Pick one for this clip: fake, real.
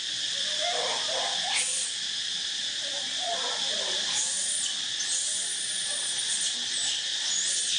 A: real